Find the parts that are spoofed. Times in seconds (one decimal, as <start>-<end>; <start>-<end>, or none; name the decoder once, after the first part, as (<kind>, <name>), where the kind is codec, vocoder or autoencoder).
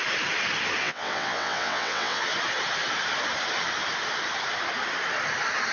0.8-2.2 (vocoder, WaveNeXt)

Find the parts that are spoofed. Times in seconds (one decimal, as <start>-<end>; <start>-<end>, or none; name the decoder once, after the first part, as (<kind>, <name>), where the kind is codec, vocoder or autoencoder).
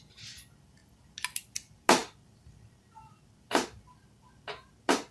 none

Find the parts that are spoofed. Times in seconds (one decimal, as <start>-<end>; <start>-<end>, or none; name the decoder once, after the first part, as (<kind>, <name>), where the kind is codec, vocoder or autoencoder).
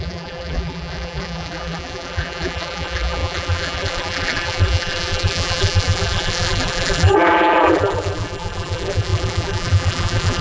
0.0-10.4 (vocoder, BigVGAN v2)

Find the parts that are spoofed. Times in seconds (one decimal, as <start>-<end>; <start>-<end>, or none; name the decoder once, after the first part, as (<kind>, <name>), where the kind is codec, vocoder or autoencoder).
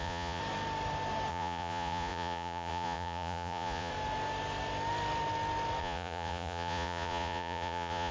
0.0-0.4 (vocoder, Vocos); 1.3-3.9; 5.8-8.1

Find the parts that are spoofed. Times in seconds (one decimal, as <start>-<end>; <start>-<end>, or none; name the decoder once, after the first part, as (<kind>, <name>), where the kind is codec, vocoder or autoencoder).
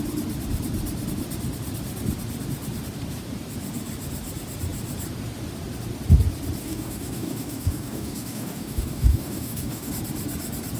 6.6-9.9 (codec, DAC)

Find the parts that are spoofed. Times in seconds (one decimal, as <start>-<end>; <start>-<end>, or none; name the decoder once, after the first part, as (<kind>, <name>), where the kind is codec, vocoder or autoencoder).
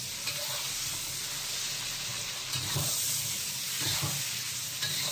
2.1-4.0 (vocoder, BigVGAN v2)